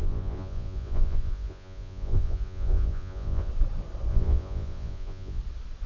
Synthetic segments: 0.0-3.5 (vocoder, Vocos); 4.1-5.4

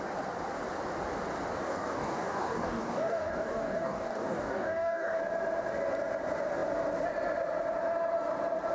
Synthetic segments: 1.6-5.2 (codec, DAC)

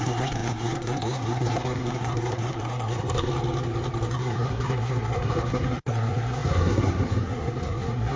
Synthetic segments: 0.0-3.3 (codec, SNAC); 4.1-8.2

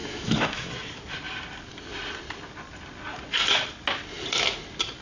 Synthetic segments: 0.0-0.7 (autoencoder, DAC-VAE)

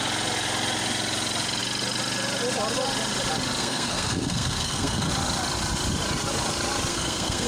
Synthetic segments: 3.6-5.1 (codec, SNAC); 6.9-7.5

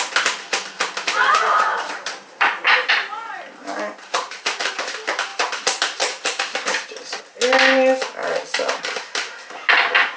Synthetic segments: 1.7-2.9 (vocoder, BigVGAN v2); 3.6-4.7; 5.3-7.2; 8.2-8.8

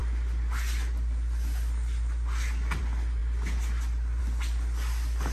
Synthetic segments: none